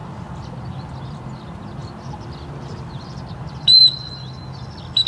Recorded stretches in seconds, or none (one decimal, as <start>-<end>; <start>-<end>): 0.0-1.4; 1.8-2.8; 3.8-5.1